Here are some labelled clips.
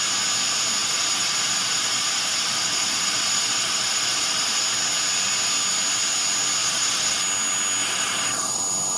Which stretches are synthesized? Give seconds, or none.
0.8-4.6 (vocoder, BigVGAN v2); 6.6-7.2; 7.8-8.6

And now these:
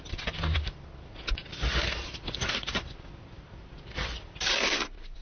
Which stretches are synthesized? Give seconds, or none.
1.4-4.5 (vocoder, BigVGAN v2)

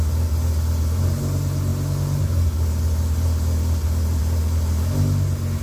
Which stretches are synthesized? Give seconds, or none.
none

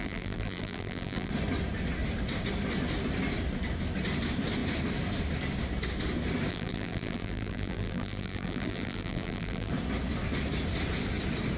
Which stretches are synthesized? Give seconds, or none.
0.0-1.3 (vocoder, BigVGAN v2); 6.5-9.7

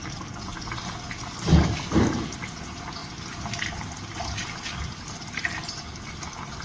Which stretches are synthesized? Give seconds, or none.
0.0-0.5 (vocoder, BigVGAN v2); 1.0-6.6

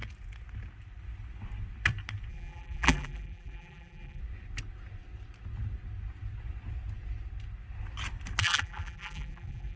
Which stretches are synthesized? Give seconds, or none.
2.3-4.2 (vocoder, BigVGAN v2); 8.4-9.8